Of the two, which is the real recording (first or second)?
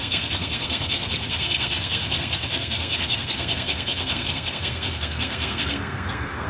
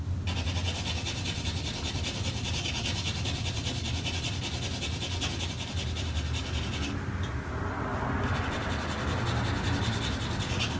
second